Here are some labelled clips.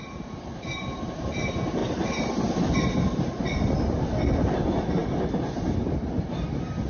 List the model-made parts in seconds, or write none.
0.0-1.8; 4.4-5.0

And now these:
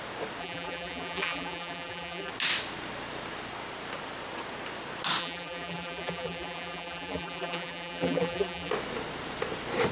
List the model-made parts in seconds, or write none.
0.4-2.3; 5.2-8.7

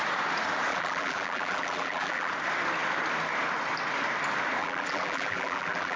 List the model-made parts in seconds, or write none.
0.7-2.3; 4.6-6.0